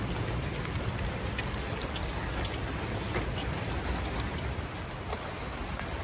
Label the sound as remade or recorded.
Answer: recorded